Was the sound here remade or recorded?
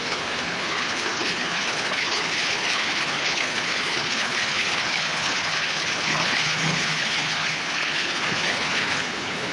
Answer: remade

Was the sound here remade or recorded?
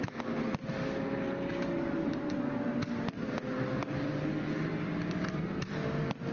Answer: recorded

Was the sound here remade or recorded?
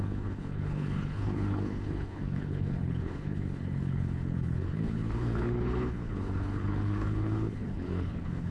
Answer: remade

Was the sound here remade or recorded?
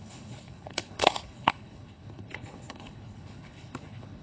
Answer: remade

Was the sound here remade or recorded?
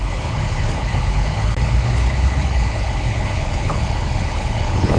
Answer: remade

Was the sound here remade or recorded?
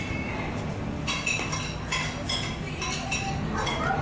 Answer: recorded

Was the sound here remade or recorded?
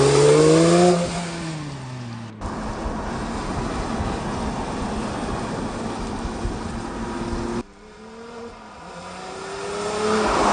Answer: recorded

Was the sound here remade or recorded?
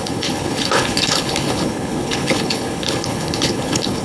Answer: remade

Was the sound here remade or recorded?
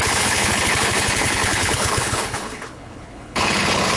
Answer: remade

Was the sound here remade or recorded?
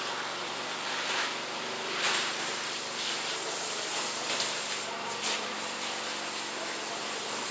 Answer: recorded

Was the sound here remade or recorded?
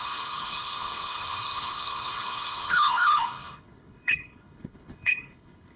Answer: remade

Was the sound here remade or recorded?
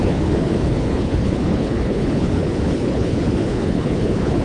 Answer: remade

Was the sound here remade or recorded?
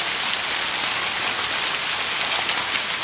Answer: recorded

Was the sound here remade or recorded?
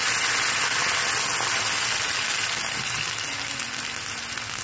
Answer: recorded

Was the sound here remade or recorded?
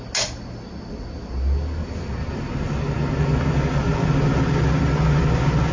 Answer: recorded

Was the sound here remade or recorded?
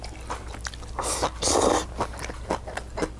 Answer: recorded